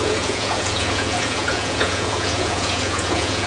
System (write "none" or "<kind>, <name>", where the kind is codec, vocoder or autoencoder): vocoder, Vocos